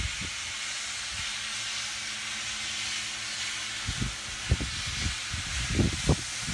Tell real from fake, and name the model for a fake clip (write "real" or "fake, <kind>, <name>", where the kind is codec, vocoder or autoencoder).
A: real